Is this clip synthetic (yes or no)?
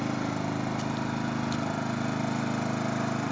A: no